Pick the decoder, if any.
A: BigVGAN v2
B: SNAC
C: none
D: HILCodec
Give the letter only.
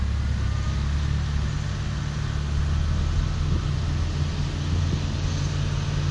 C